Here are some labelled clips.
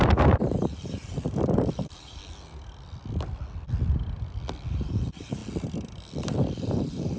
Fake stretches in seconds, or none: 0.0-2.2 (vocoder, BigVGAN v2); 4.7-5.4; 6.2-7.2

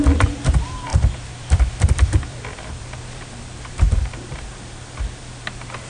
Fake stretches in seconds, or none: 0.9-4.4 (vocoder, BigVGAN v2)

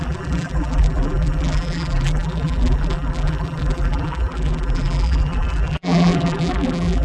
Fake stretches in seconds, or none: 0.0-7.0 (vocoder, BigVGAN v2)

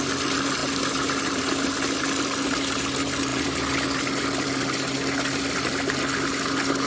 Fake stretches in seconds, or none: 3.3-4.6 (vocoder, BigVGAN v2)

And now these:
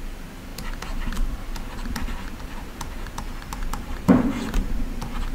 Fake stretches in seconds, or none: 3.5-4.8 (vocoder, BigVGAN v2)